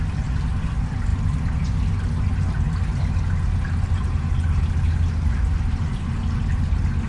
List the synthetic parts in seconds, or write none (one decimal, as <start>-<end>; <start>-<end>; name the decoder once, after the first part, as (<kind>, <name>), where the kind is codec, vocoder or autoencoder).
none